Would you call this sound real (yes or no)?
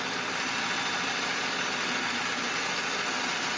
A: yes